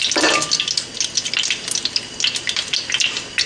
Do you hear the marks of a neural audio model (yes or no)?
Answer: no